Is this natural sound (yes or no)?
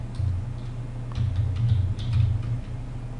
yes